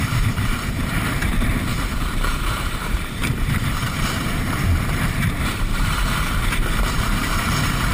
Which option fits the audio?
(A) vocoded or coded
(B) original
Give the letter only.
A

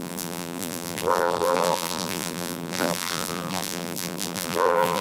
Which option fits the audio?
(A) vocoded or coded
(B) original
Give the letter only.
A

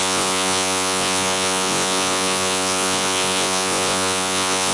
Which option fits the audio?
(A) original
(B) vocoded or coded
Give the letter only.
B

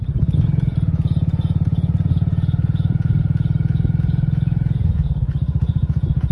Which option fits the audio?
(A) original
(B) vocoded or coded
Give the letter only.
B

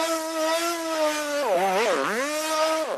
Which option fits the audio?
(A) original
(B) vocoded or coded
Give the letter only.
A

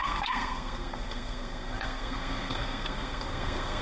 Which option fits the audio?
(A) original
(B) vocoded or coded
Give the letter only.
B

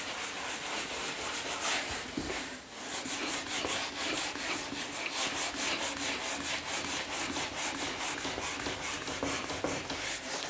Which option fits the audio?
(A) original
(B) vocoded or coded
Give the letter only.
A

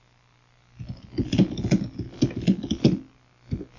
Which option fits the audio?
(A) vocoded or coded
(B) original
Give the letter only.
B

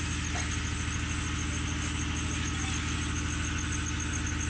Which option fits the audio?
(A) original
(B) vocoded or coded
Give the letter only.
A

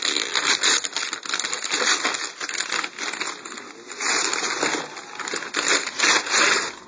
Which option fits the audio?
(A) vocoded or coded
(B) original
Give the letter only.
B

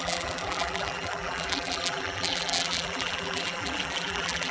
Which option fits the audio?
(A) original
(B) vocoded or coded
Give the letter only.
B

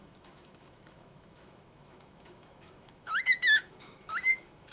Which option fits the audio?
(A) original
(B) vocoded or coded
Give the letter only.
B